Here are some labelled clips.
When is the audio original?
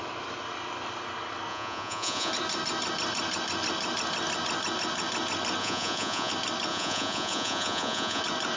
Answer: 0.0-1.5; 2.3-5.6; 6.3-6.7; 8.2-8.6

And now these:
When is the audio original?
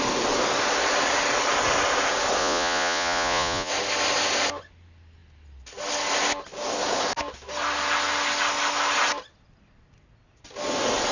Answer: 0.0-2.4; 3.7-11.1